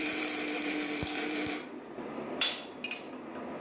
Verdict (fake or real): fake